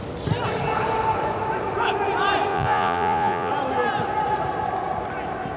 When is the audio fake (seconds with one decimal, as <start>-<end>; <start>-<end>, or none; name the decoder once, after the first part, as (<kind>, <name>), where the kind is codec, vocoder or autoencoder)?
2.5-3.5 (vocoder, Vocos)